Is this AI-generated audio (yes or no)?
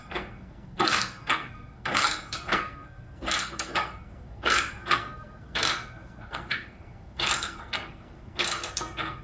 yes